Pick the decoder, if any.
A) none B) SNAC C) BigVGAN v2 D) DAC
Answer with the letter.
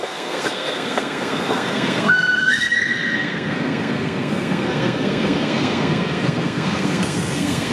B